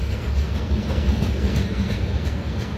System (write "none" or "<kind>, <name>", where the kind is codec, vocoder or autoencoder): codec, SNAC